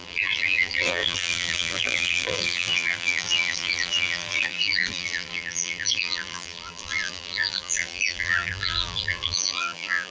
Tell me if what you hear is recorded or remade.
remade